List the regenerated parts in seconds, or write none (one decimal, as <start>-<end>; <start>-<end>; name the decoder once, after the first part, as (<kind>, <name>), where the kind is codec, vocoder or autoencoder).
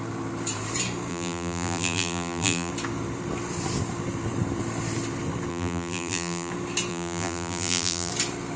1.1-2.7 (vocoder, BigVGAN v2); 5.5-6.5; 6.9-8.1